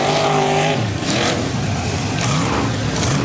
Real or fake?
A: fake